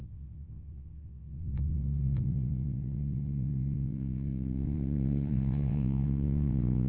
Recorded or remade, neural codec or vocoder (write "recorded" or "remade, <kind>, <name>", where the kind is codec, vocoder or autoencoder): remade, vocoder, WaveNeXt